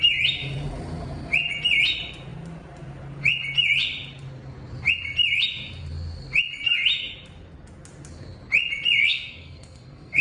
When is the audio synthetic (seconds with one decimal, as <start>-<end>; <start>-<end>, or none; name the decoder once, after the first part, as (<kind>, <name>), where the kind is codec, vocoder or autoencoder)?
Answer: 9.0-10.2 (codec, SNAC)